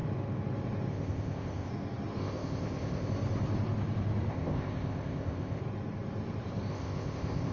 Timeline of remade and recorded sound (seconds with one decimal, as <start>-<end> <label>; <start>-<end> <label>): 0.0-0.9 recorded; 0.9-1.7 remade; 1.7-2.2 recorded; 2.2-3.1 remade; 3.1-4.3 recorded; 4.3-5.6 remade; 5.6-6.7 recorded; 6.7-7.5 remade